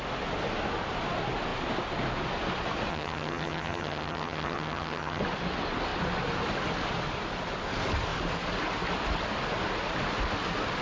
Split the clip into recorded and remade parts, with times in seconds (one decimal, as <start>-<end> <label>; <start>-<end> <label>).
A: 0.0-2.9 recorded; 2.9-5.2 remade; 5.2-10.8 recorded